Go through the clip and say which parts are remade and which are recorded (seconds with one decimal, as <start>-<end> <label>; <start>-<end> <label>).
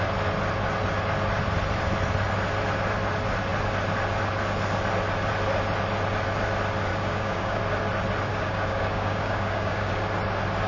0.0-6.9 recorded; 6.9-7.6 remade; 7.6-8.3 recorded; 8.3-9.9 remade; 9.9-10.7 recorded